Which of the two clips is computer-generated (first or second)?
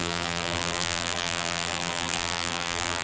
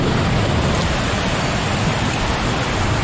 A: first